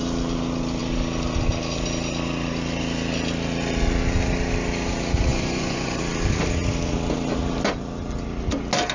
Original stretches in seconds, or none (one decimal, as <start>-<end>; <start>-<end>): 0.0-5.3; 6.0-8.9